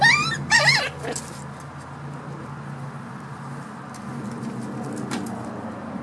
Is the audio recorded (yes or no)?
yes